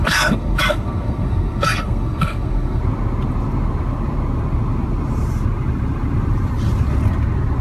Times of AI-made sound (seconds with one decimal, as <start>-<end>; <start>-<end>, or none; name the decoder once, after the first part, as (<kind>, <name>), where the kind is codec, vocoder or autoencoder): 0.0-2.8 (codec, SNAC)

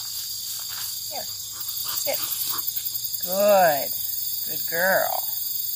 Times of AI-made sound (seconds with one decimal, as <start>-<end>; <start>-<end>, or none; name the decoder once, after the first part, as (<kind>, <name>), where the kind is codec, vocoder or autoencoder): 4.3-5.8 (vocoder, Vocos)